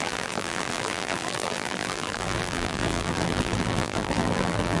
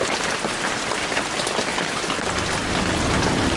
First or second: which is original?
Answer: second